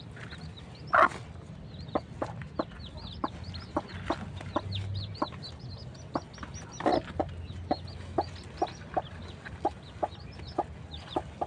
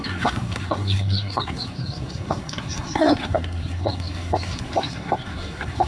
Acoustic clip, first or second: first